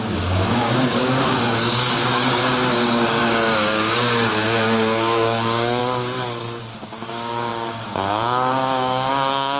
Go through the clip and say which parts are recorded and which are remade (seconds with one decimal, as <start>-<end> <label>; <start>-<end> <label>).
0.0-5.8 remade; 5.8-6.6 recorded; 6.6-9.6 remade